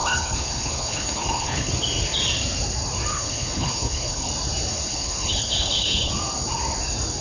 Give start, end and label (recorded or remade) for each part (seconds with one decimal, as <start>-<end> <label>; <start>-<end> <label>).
0.0-1.7 remade; 1.7-3.1 recorded; 3.1-4.3 remade; 4.3-4.7 recorded; 4.7-6.1 remade; 6.1-7.2 recorded

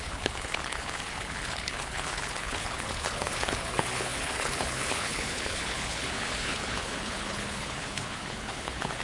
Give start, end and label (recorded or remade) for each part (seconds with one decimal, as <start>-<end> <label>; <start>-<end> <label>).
0.0-9.0 remade

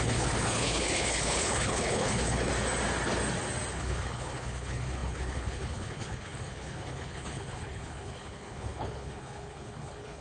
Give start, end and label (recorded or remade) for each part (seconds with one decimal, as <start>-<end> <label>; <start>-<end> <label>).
0.0-2.5 remade; 2.5-3.7 recorded; 3.7-10.2 remade

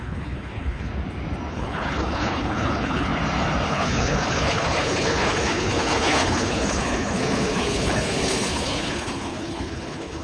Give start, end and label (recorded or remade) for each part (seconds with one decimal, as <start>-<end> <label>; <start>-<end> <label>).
0.0-0.9 remade; 0.9-1.5 recorded; 1.5-3.1 remade; 3.1-3.7 recorded; 3.7-10.2 remade

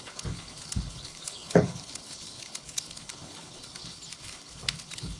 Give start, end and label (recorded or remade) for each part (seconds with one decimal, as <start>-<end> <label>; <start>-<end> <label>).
0.0-5.2 remade

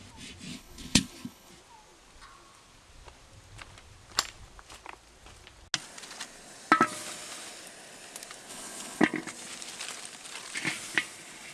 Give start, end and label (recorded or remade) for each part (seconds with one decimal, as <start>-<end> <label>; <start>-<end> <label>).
0.0-0.5 recorded; 0.5-1.5 remade; 1.5-8.5 recorded; 8.5-9.0 remade; 9.0-11.5 recorded